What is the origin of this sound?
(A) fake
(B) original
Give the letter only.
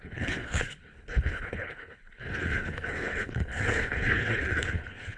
A